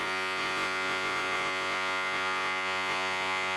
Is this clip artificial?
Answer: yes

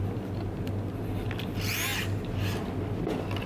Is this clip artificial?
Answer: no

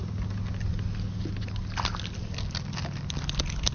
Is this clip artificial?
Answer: no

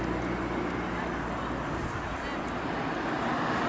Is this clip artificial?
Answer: no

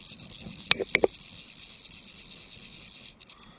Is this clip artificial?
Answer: no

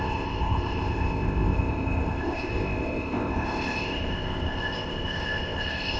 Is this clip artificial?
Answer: yes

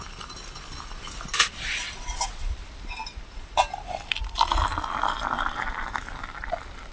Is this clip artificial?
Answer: no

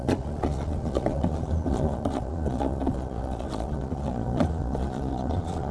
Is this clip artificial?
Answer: yes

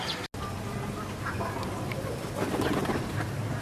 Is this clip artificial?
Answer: no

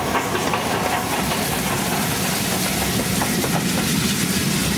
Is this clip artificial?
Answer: no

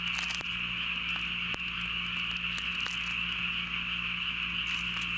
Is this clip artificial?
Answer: no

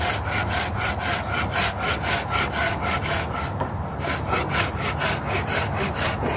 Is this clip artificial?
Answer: no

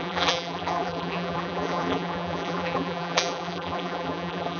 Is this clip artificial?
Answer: yes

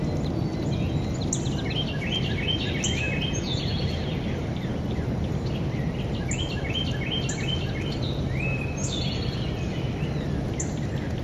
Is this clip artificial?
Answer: no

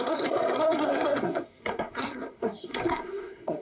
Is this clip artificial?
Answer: yes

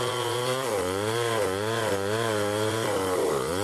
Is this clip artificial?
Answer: yes